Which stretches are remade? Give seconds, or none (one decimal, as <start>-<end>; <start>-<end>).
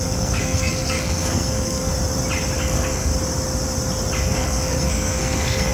0.0-1.9; 2.6-3.1; 4.2-5.7